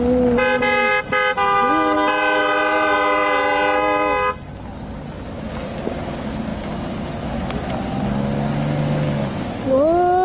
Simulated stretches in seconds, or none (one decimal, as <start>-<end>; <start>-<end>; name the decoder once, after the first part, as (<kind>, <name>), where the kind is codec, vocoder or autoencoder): 6.5-7.2 (vocoder, BigVGAN v2)